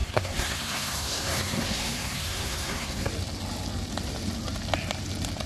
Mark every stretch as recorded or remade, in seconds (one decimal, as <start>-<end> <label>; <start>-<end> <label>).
0.0-3.1 remade; 3.1-5.5 recorded